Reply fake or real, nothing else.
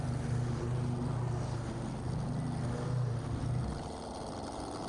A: real